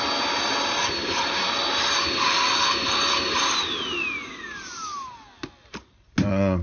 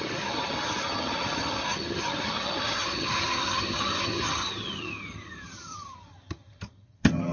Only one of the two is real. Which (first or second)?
first